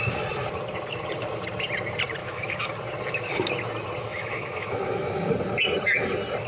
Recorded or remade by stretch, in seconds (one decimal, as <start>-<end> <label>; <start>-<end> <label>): 0.0-2.2 recorded; 2.2-2.7 remade; 2.7-4.0 recorded; 4.0-5.3 remade; 5.3-6.5 recorded